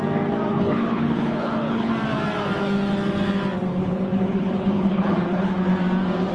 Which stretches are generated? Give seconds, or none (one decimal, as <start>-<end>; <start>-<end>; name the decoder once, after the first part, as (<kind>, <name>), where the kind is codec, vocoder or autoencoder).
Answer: 0.5-1.9 (codec, HILCodec); 3.7-5.5